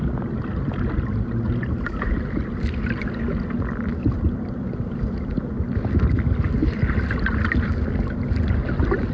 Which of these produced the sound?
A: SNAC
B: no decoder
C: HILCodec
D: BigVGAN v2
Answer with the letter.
B